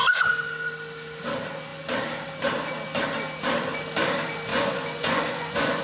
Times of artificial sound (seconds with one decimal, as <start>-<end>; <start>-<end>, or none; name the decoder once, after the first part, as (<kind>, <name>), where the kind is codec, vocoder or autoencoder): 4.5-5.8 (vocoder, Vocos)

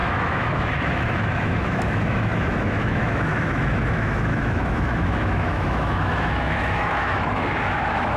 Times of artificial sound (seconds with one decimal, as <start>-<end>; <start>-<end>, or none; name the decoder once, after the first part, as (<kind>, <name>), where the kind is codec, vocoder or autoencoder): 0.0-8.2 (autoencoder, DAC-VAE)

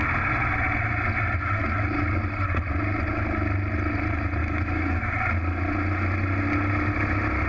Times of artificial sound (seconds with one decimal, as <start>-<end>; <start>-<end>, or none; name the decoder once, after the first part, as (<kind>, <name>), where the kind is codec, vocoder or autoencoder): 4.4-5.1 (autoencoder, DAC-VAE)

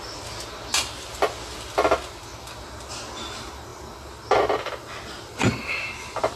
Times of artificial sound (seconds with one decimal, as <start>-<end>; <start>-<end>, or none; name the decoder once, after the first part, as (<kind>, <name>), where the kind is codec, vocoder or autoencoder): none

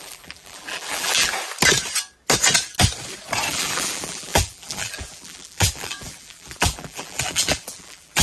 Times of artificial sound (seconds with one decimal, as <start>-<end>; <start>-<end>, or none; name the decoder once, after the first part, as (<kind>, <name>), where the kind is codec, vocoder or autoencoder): 0.0-1.3 (vocoder, BigVGAN v2); 3.5-8.2

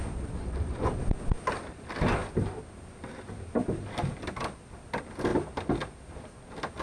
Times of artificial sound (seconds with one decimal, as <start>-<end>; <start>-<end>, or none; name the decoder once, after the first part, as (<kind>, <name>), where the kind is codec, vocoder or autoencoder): 0.4-1.0 (vocoder, Vocos)

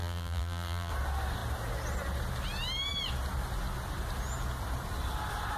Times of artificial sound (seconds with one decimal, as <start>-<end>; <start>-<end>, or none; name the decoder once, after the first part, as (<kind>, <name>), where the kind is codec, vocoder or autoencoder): 0.0-0.9 (vocoder, BigVGAN v2)

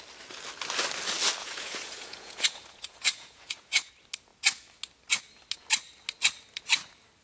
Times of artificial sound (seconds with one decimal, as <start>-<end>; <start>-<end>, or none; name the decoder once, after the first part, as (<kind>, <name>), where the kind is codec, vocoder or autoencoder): 1.4-3.9 (vocoder, Vocos)